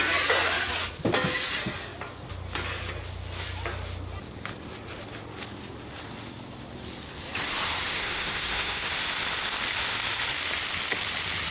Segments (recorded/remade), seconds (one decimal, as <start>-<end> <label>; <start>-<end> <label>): 0.0-7.9 recorded; 7.9-8.9 remade; 8.9-11.5 recorded